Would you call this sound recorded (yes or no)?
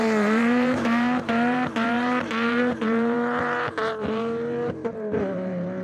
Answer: no